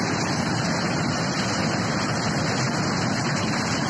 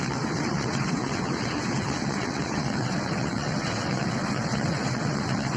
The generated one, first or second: second